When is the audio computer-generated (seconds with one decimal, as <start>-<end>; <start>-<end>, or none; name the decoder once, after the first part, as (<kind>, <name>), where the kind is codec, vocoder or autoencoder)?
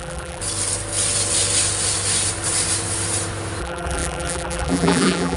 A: 0.0-0.4 (vocoder, BigVGAN v2); 3.6-5.4